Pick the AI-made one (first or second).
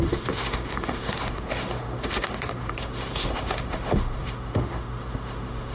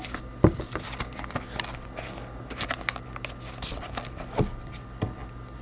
first